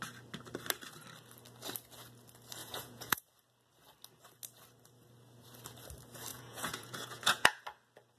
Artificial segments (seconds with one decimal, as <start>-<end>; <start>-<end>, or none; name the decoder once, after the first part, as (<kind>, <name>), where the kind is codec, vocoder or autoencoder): 2.6-3.2 (vocoder, Vocos); 6.3-7.6